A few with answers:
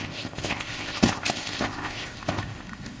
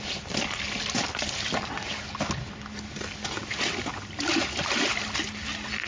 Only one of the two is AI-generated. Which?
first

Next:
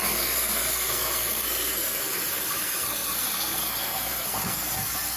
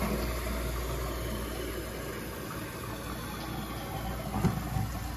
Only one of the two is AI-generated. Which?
first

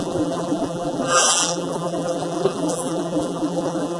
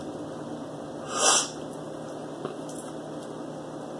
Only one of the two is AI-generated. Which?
first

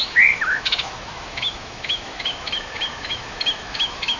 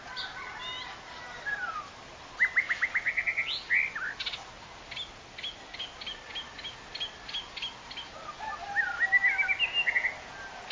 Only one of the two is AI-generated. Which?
first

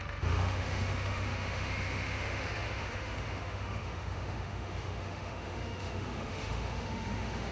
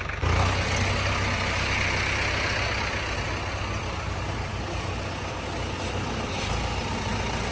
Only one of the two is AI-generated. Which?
first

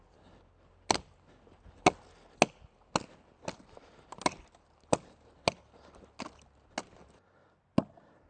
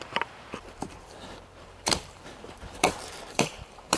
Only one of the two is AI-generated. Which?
second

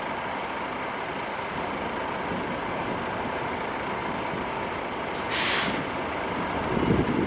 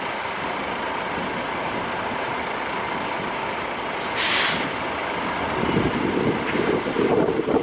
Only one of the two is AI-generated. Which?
second